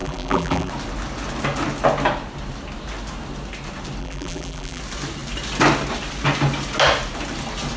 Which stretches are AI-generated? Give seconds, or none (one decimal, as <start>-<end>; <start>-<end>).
0.0-0.7; 4.0-4.8